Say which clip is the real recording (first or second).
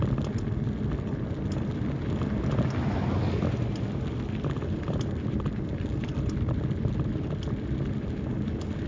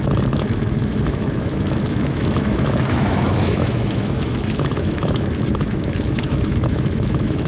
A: first